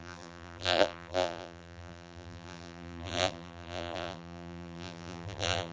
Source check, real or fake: fake